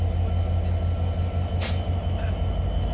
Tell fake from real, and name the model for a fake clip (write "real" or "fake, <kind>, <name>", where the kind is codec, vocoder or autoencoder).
real